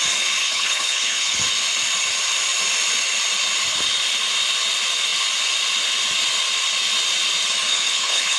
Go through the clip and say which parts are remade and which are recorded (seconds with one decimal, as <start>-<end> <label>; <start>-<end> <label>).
0.0-0.4 recorded; 0.4-1.4 remade; 1.4-7.7 recorded; 7.7-8.4 remade